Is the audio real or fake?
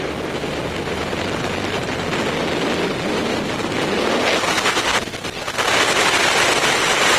real